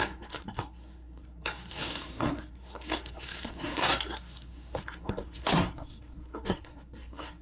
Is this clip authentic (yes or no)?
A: no